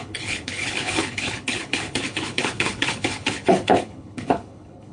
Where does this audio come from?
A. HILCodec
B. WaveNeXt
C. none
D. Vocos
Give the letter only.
A